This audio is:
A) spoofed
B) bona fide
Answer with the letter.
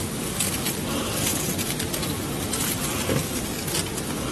B